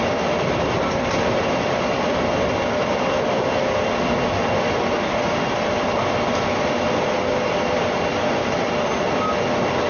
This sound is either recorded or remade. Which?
recorded